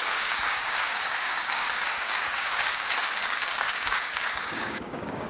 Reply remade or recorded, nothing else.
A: remade